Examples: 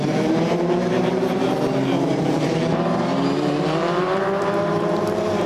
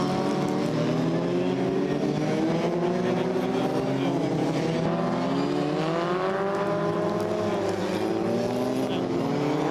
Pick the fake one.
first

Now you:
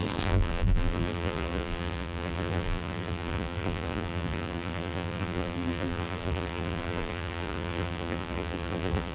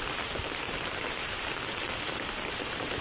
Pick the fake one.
first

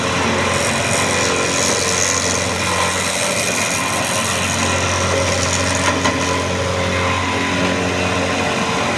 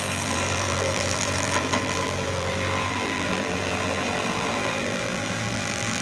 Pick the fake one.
second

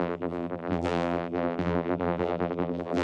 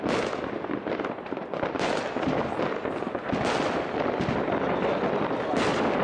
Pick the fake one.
first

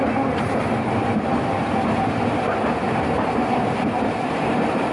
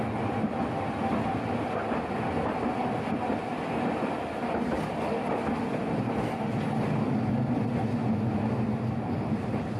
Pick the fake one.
first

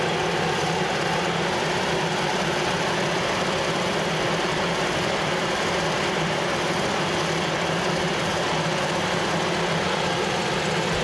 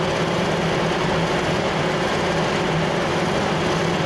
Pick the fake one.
first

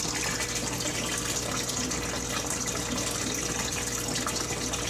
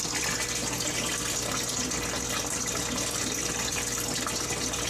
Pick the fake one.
first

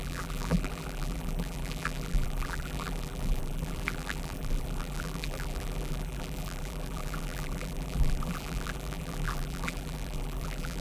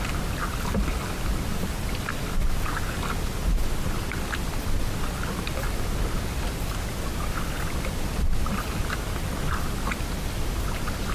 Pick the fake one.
first